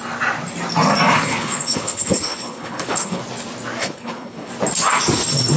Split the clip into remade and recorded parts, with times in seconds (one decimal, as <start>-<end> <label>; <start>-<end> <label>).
0.0-1.2 recorded; 1.2-3.2 remade; 3.2-3.8 recorded; 3.8-4.5 remade; 4.5-5.6 recorded